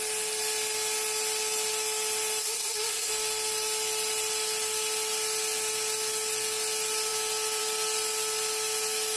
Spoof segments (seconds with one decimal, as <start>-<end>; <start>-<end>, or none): 2.4-3.1